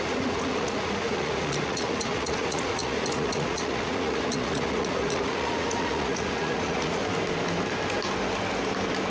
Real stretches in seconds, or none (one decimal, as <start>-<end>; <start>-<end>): 7.0-9.1